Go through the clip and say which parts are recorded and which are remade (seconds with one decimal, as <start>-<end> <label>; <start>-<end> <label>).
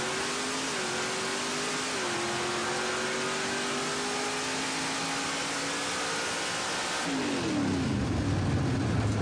0.0-9.2 recorded